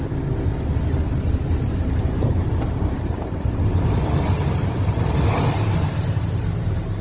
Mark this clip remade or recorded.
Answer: recorded